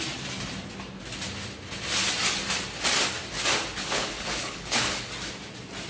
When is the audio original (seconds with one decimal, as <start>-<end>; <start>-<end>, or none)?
0.0-3.8; 5.1-5.9